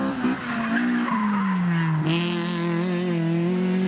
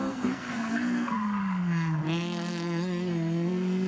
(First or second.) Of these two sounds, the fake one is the second